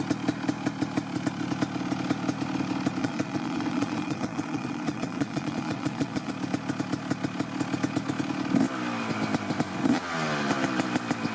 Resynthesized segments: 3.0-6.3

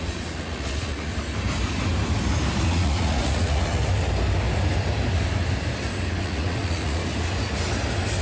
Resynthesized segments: 0.0-1.1; 2.6-3.8; 6.2-7.0

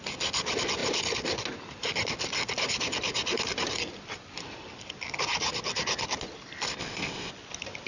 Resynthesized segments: 6.8-7.3

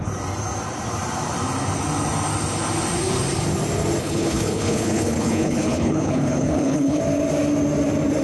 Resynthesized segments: 4.0-7.0